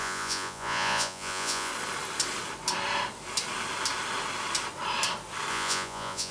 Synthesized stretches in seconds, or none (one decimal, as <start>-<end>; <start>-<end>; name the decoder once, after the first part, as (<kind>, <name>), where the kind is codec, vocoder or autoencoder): 0.0-1.7 (vocoder, Vocos); 5.5-6.3